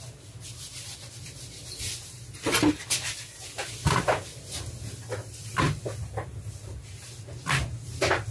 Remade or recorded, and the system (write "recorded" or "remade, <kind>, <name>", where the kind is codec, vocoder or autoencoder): recorded